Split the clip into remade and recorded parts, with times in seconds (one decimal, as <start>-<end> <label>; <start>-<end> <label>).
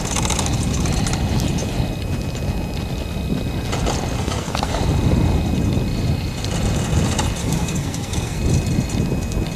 0.0-4.2 recorded; 4.2-4.8 remade; 4.8-7.4 recorded; 7.4-8.4 remade; 8.4-9.6 recorded